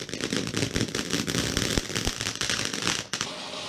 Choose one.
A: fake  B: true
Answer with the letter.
B